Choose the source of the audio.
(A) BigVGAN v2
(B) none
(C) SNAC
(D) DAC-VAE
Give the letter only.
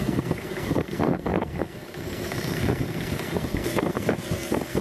C